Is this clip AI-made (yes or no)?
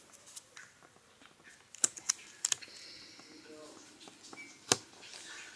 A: no